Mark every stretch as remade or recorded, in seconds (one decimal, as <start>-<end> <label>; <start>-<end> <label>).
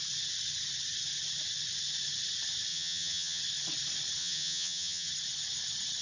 0.0-2.7 recorded; 2.7-3.4 remade; 3.4-4.2 recorded; 4.2-5.1 remade; 5.1-6.0 recorded